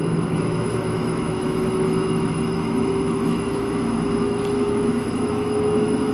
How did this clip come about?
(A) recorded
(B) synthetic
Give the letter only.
B